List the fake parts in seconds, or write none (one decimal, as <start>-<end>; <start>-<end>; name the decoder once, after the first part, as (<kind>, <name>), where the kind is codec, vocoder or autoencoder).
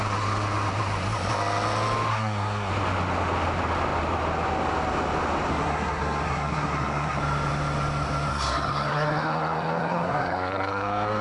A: 2.1-2.7 (codec, SNAC); 5.5-7.2; 8.3-11.2